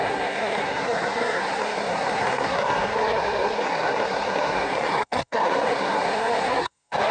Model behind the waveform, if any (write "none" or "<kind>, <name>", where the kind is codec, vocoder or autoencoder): codec, SNAC